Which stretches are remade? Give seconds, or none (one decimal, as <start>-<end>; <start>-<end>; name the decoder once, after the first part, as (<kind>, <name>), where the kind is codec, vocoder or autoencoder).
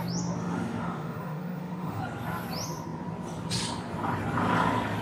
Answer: 0.4-2.0 (autoencoder, DAC-VAE)